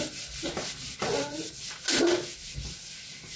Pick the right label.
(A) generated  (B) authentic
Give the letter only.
B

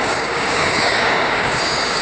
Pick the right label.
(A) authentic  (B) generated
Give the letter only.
B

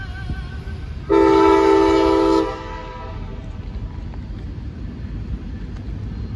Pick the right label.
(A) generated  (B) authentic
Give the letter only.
B